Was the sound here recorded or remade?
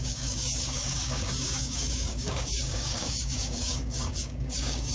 remade